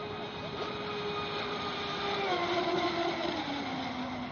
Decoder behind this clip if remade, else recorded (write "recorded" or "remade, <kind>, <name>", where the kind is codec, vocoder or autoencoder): recorded